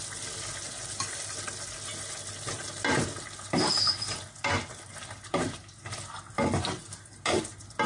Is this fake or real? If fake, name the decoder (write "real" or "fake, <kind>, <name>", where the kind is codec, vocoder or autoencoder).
real